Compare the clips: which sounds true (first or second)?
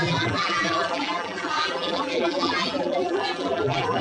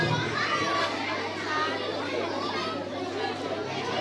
second